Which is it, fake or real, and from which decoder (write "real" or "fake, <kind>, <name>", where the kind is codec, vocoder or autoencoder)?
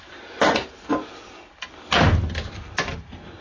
real